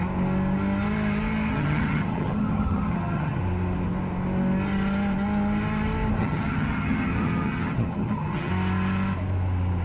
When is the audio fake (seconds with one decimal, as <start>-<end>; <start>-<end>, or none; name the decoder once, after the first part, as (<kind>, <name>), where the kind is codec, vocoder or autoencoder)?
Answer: 1.5-3.4 (vocoder, HiFi-GAN); 6.2-8.5